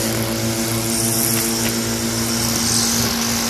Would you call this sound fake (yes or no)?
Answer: no